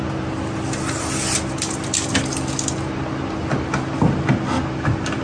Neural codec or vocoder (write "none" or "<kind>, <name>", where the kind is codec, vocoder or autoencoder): none